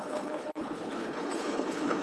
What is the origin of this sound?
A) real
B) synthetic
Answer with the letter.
B